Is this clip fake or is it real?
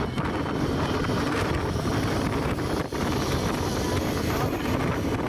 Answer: real